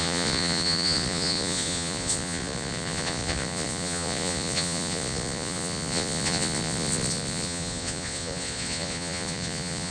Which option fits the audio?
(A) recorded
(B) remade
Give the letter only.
B